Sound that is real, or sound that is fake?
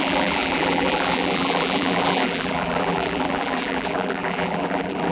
fake